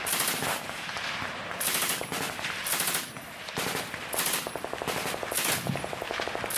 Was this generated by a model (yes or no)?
no